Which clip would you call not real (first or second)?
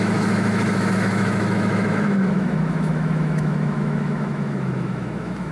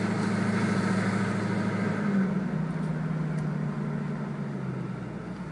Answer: first